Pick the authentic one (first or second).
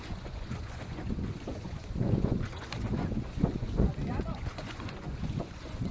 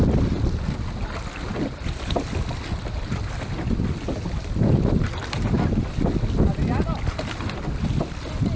second